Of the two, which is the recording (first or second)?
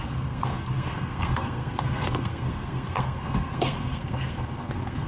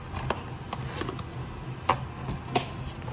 second